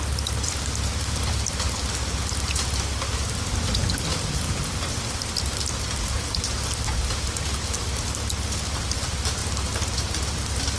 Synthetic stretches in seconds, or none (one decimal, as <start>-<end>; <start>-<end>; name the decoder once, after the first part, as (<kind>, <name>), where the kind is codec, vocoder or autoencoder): none